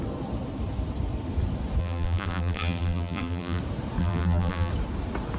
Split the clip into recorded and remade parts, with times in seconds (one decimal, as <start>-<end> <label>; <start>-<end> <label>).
0.0-1.8 recorded; 1.8-3.6 remade; 3.6-4.0 recorded; 4.0-4.7 remade; 4.7-5.4 recorded